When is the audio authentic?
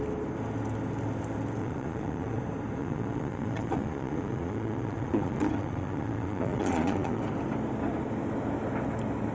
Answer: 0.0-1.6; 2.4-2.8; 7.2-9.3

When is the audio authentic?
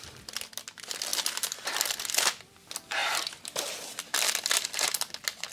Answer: 0.0-1.1; 2.3-3.0; 4.3-5.5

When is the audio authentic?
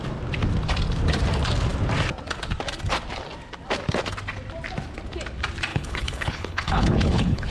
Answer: 0.0-5.7